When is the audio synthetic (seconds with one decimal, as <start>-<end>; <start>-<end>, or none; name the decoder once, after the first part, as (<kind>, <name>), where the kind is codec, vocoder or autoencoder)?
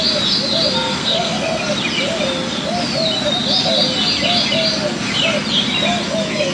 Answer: 1.0-1.6 (codec, SNAC)